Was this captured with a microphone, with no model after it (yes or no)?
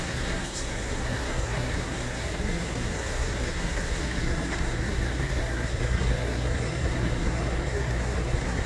no